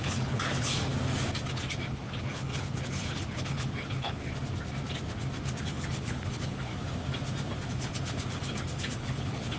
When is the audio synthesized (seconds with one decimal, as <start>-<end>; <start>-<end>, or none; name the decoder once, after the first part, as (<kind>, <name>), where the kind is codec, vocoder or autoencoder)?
0.0-0.9 (codec, HILCodec); 1.9-4.3; 5.6-6.7; 7.7-9.6